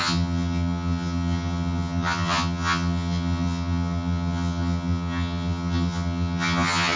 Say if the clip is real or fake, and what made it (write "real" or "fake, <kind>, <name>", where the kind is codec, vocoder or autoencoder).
fake, vocoder, HiFi-GAN